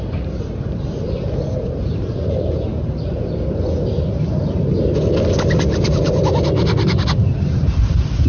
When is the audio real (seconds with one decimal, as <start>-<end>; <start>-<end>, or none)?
2.7-7.6